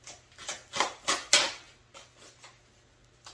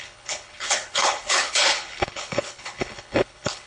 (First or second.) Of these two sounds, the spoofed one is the second